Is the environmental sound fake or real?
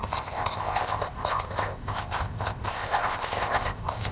fake